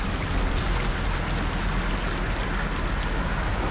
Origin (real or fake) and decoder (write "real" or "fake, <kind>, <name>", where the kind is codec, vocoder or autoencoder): real